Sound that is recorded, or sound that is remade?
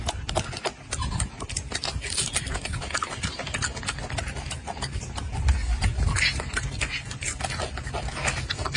recorded